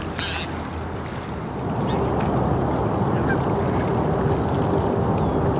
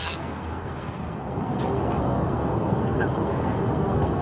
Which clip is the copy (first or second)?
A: second